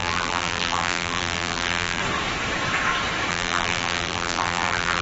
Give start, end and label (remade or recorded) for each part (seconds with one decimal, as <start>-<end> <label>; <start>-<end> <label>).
0.0-2.0 remade; 2.0-3.3 recorded; 3.3-5.0 remade